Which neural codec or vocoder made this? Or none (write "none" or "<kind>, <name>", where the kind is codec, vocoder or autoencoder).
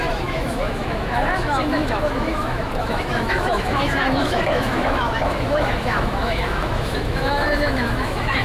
autoencoder, DAC-VAE